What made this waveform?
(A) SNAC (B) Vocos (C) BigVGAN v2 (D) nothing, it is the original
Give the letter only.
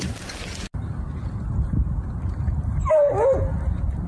D